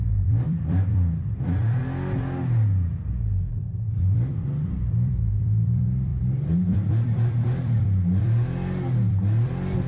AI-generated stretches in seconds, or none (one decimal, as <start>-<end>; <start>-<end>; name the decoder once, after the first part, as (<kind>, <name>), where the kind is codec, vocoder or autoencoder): 0.0-1.8 (vocoder, BigVGAN v2); 3.1-9.9